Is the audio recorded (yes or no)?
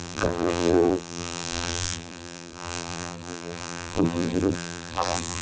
no